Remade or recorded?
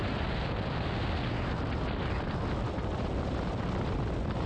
recorded